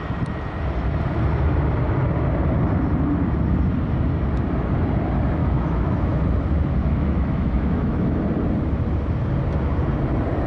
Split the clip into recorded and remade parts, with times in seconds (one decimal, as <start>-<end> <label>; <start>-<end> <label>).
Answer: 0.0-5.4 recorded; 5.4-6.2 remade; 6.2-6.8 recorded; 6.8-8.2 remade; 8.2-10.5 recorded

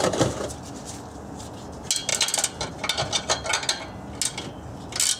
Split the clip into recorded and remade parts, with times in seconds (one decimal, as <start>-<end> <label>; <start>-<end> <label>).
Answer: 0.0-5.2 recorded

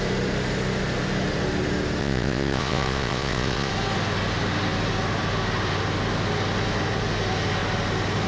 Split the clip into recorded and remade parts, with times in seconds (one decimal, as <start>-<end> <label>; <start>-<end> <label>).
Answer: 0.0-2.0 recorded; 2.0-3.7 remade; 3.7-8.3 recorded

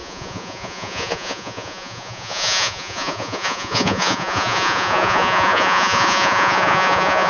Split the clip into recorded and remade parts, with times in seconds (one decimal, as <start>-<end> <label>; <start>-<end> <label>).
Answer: 0.0-7.3 remade

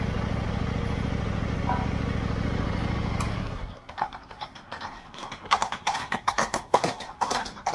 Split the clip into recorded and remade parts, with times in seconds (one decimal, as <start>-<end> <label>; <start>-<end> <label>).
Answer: 0.0-3.3 recorded; 3.3-7.7 remade